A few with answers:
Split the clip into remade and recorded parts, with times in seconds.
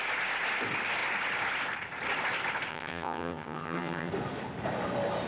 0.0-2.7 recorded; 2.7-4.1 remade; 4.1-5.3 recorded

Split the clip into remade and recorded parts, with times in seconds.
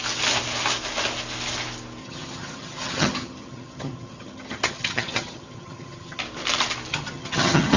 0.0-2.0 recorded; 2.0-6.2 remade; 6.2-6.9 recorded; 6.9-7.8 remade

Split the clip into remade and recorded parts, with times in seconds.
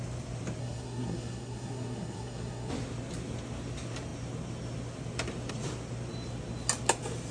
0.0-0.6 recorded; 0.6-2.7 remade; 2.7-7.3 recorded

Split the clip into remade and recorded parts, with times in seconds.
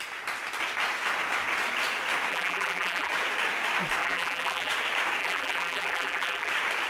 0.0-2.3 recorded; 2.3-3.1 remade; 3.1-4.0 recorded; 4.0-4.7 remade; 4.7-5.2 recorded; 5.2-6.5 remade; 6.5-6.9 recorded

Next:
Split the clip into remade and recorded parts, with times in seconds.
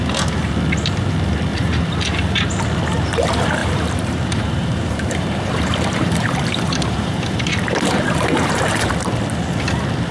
0.0-1.5 recorded; 1.5-2.5 remade; 2.5-3.6 recorded; 3.6-8.9 remade; 8.9-10.1 recorded